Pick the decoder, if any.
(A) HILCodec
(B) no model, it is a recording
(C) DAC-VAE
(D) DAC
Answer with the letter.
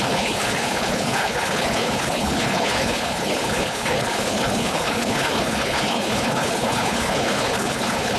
A